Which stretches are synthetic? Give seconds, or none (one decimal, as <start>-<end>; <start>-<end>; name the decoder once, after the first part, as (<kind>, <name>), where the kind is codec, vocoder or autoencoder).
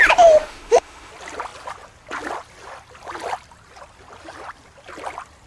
0.4-1.1 (autoencoder, DAC-VAE)